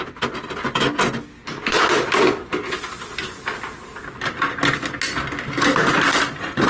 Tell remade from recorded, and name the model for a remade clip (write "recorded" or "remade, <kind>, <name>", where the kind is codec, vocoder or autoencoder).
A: recorded